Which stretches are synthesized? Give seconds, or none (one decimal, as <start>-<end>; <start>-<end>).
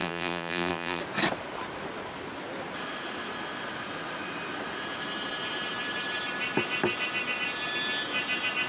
0.0-1.0